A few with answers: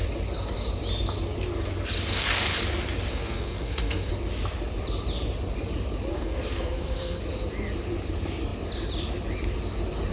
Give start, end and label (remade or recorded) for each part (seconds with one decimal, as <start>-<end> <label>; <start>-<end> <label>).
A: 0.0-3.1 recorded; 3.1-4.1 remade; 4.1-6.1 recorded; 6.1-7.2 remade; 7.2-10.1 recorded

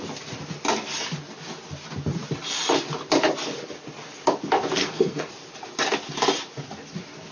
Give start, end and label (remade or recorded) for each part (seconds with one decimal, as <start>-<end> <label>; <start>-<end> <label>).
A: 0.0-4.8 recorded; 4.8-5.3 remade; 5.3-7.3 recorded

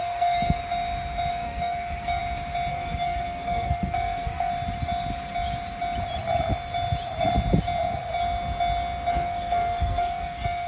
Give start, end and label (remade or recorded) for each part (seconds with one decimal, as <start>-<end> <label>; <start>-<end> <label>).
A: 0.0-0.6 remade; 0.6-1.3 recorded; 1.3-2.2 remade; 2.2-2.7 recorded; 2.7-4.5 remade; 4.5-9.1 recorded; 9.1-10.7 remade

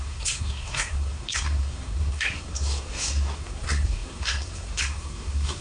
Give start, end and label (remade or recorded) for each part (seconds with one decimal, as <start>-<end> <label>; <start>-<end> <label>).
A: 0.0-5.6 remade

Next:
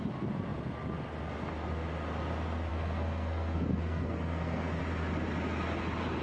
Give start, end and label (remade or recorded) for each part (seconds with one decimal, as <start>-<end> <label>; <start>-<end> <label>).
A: 0.0-2.7 recorded; 2.7-4.8 remade; 4.8-6.2 recorded

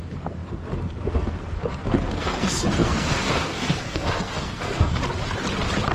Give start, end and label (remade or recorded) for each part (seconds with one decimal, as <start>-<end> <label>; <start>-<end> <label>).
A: 0.0-5.0 remade; 5.0-5.9 recorded

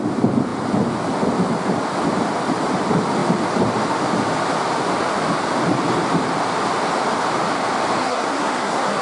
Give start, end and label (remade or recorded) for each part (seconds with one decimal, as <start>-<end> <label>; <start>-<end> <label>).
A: 0.0-8.0 recorded; 8.0-9.0 remade